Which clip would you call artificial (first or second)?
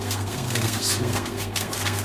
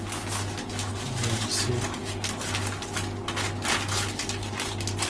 first